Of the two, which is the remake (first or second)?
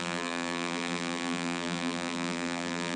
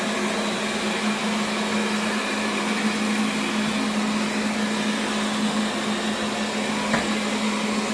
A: first